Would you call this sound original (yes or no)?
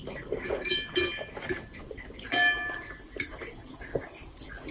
yes